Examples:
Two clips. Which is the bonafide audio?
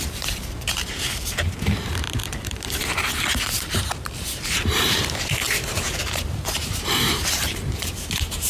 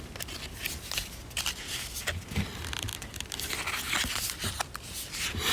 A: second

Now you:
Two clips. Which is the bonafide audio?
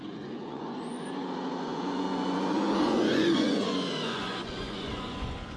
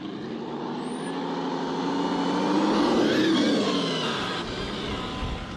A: second